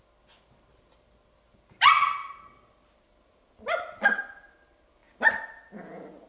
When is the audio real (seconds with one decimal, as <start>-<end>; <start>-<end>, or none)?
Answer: 0.0-6.3